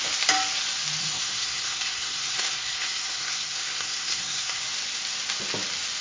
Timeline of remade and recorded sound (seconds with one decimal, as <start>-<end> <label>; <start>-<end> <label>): 0.0-1.0 recorded; 1.0-4.6 remade; 4.6-6.0 recorded